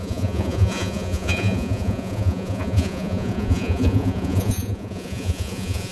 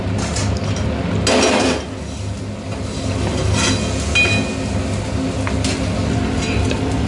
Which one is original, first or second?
second